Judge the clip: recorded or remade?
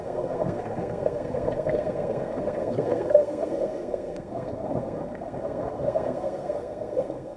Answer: remade